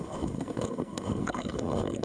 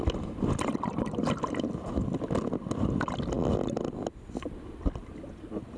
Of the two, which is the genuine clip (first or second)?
second